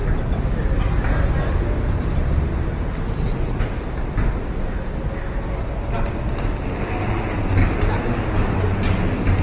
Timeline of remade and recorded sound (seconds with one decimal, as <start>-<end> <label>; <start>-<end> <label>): 0.0-9.4 recorded

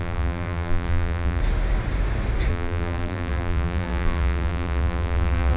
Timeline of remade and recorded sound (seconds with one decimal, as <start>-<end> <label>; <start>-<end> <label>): 0.0-1.4 remade; 1.4-2.5 recorded; 2.5-5.6 remade

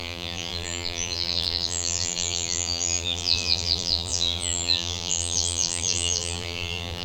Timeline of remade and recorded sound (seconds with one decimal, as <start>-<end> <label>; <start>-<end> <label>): 0.0-7.0 remade

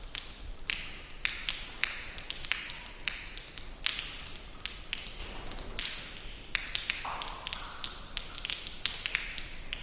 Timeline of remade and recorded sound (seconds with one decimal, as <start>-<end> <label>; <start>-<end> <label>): 0.0-1.8 recorded; 1.8-2.9 remade; 2.9-9.8 recorded

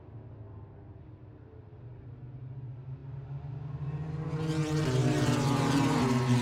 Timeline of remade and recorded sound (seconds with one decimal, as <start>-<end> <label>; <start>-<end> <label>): 0.0-6.4 recorded

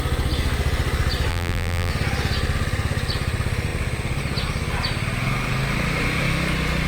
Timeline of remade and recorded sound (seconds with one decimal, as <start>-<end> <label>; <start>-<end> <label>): 0.0-1.3 recorded; 1.3-1.9 remade; 1.9-6.9 recorded

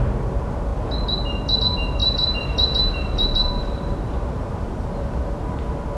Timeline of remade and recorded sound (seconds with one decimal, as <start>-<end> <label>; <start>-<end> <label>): 0.0-2.0 recorded; 2.0-5.6 remade; 5.6-6.0 recorded